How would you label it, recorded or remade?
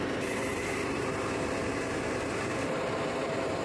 remade